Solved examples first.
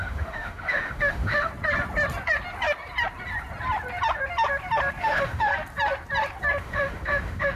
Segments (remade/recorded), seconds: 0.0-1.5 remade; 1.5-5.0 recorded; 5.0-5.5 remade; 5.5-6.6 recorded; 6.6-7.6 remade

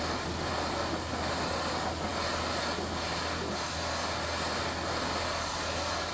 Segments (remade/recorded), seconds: 0.0-6.1 recorded

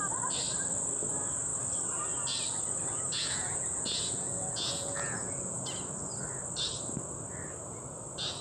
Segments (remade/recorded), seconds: 0.0-3.2 recorded; 3.2-5.8 remade; 5.8-8.4 recorded

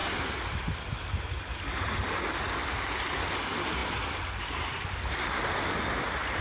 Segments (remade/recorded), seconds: 0.0-6.4 recorded

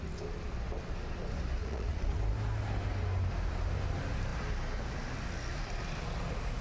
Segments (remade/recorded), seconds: 0.0-1.6 recorded; 1.6-2.2 remade; 2.2-6.6 recorded

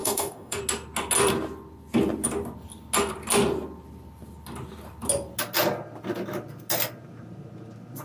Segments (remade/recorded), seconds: 0.0-0.6 remade; 0.6-8.0 recorded

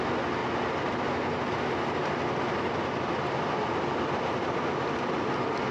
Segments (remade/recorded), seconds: 0.0-5.7 recorded

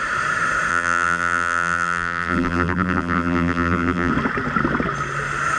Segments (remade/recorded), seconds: 0.0-0.7 recorded; 0.7-4.1 remade; 4.1-5.6 recorded